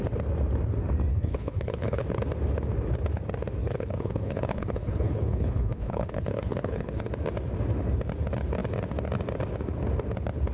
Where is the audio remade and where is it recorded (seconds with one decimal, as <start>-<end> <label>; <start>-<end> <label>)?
0.0-1.1 recorded; 1.1-2.0 remade; 2.0-3.6 recorded; 3.6-7.1 remade; 7.1-10.5 recorded